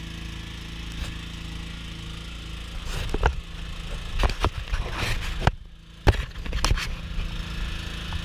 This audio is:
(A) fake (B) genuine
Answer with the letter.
B